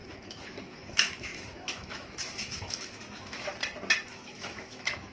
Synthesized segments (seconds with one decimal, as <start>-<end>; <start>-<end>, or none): 0.0-3.5; 4.1-5.1